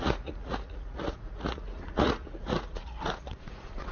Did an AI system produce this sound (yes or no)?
yes